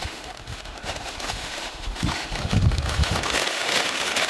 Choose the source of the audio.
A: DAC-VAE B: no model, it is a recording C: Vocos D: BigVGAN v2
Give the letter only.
A